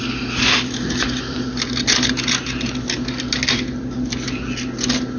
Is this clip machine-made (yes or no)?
no